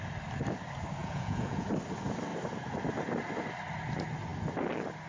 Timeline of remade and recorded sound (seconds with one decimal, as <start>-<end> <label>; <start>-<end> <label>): 0.0-1.0 recorded; 1.0-1.7 remade; 1.7-5.1 recorded